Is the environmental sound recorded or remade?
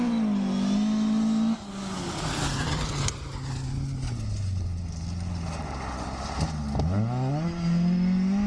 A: recorded